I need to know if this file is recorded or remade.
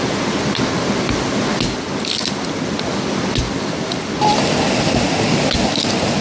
recorded